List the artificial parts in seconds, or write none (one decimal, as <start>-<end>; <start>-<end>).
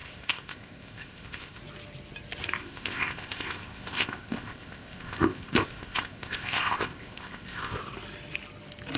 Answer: 0.0-1.6; 2.6-7.8